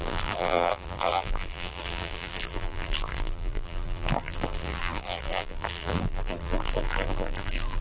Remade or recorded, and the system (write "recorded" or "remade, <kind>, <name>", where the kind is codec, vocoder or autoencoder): remade, vocoder, BigVGAN v2